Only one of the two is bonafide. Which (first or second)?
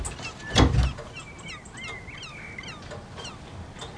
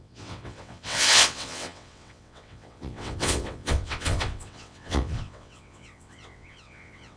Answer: first